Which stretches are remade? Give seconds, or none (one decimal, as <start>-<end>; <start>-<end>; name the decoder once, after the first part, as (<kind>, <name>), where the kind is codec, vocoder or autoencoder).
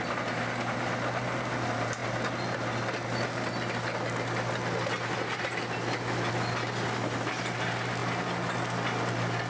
none